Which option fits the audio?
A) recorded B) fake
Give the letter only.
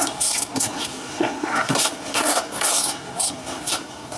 B